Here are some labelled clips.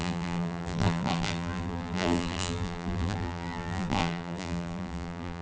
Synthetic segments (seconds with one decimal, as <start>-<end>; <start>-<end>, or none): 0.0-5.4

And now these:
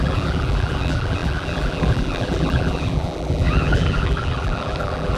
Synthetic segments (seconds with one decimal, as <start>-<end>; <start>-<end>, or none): 0.0-5.2

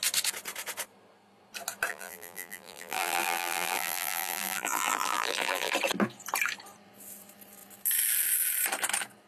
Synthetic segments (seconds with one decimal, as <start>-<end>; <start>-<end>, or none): 1.9-5.7